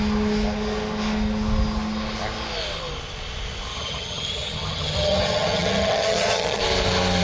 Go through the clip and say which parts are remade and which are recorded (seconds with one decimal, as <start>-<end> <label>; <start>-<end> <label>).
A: 0.0-3.7 recorded; 3.7-6.6 remade; 6.6-7.2 recorded